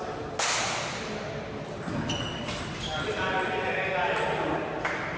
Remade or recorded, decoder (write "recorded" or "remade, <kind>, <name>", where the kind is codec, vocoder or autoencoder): recorded